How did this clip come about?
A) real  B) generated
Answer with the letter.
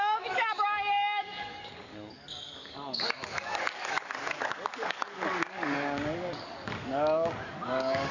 B